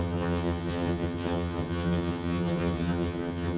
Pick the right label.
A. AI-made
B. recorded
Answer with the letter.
A